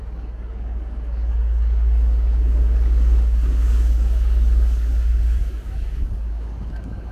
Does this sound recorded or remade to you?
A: remade